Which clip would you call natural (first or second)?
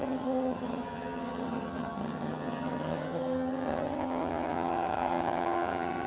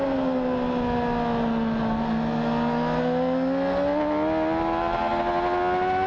second